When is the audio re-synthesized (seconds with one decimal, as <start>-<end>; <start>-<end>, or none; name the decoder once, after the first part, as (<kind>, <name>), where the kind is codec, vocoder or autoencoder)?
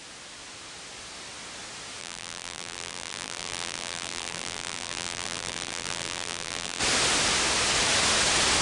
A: 2.0-6.8 (vocoder, BigVGAN v2)